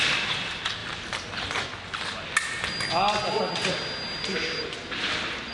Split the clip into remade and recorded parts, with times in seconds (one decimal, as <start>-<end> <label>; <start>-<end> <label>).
0.0-5.5 recorded